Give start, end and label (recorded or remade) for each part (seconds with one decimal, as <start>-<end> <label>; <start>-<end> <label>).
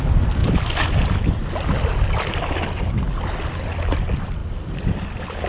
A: 0.0-5.5 recorded